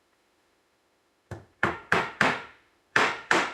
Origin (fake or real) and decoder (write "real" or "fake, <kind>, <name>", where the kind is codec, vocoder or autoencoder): fake, autoencoder, DAC-VAE